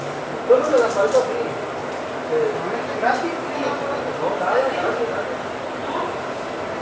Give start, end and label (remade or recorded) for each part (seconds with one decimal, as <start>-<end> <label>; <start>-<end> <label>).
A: 0.0-6.8 recorded